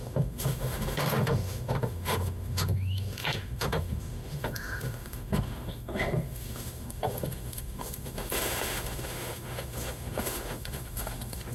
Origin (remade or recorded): remade